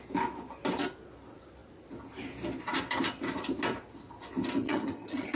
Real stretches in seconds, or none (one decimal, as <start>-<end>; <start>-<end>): 0.0-4.6